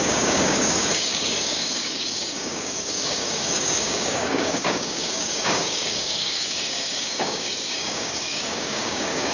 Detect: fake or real fake